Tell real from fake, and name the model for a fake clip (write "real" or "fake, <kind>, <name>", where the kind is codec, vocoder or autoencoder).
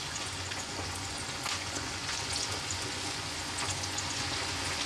fake, vocoder, Vocos